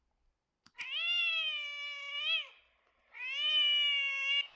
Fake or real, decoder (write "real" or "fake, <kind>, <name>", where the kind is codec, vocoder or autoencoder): real